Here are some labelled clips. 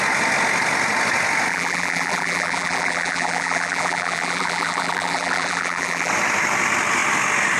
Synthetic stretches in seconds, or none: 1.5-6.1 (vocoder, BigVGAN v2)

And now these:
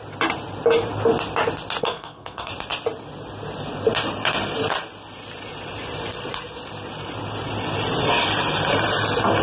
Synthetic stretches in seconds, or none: 1.8-2.5 (codec, SNAC)

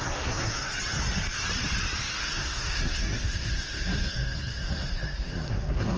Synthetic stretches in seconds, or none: 0.0-0.7 (codec, SNAC); 2.2-6.0

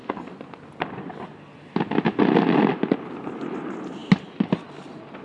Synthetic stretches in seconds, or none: none

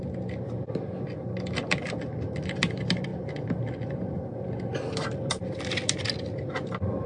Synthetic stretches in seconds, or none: none